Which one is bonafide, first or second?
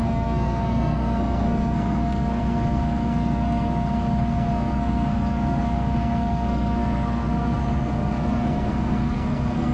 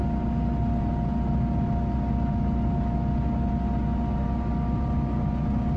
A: second